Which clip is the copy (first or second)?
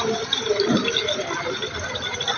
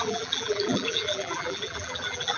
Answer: second